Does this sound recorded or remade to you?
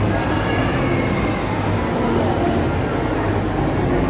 recorded